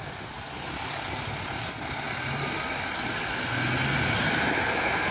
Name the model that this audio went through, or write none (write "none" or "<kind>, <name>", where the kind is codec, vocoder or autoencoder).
none